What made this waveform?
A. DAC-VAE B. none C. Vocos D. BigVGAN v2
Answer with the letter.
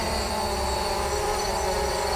D